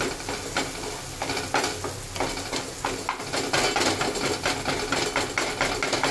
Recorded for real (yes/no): yes